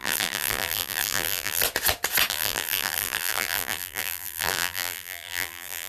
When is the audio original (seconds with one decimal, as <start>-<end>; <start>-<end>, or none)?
1.6-2.3

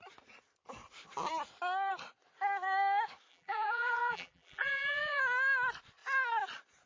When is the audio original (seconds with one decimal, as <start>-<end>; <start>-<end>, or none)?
0.0-3.3; 5.2-6.9

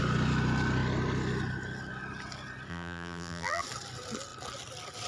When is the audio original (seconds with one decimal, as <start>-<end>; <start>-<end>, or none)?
0.0-2.7; 3.6-5.1

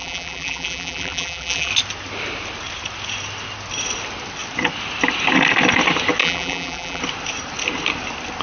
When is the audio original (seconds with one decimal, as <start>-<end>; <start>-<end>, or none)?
1.7-6.2; 7.0-8.4

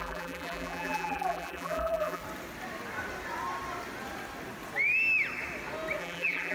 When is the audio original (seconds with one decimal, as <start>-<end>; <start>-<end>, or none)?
2.2-6.0

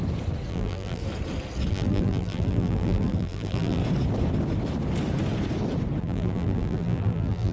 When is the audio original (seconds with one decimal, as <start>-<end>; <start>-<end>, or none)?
0.0-0.5; 1.0-1.7; 3.8-6.0